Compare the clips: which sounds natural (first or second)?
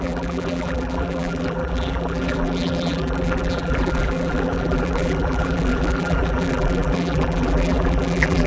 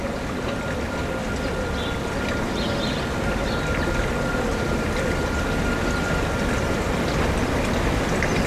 second